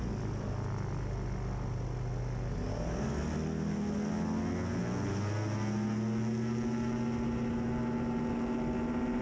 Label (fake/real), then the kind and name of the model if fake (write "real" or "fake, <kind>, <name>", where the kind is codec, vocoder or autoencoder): real